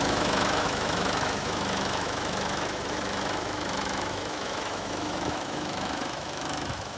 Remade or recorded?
remade